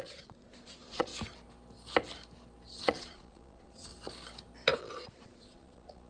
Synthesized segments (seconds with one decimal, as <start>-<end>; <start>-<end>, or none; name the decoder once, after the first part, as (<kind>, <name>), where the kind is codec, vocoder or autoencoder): 0.0-1.1 (vocoder, Vocos); 2.8-3.9; 4.8-6.1